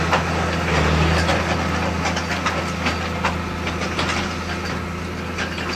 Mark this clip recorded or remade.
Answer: recorded